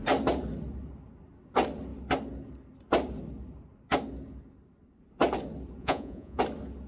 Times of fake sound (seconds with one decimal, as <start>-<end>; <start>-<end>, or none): 5.8-6.4